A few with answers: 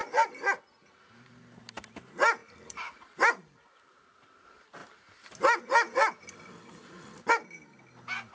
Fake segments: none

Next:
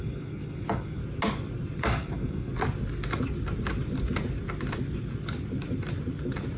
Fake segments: 0.0-1.0 (codec, DAC); 1.8-2.5

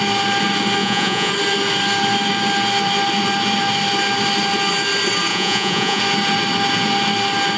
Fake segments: 0.8-1.3 (vocoder, Vocos); 5.3-6.0